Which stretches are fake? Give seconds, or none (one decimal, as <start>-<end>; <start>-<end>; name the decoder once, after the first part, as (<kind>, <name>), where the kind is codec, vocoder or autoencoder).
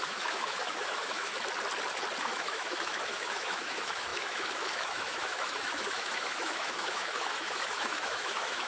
0.0-1.3 (autoencoder, DAC-VAE); 2.2-8.7